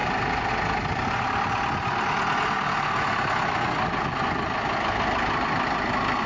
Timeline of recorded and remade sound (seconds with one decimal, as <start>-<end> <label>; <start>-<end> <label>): 0.0-6.3 recorded